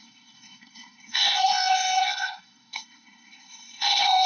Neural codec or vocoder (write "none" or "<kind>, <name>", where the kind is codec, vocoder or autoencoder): codec, SNAC